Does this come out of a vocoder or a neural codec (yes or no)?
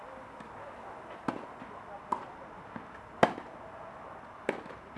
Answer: no